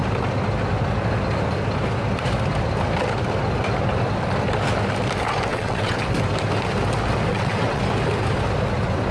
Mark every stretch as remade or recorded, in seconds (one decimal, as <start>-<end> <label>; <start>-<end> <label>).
0.0-5.5 recorded; 5.5-6.0 remade; 6.0-7.3 recorded; 7.3-7.8 remade; 7.8-9.1 recorded